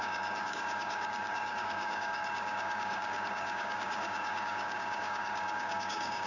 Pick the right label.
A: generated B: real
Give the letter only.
A